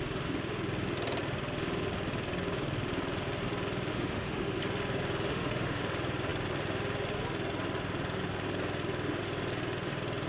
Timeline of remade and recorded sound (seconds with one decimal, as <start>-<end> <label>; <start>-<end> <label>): 0.0-3.9 recorded; 3.9-4.6 remade; 4.6-5.3 recorded; 5.3-5.8 remade; 5.8-10.3 recorded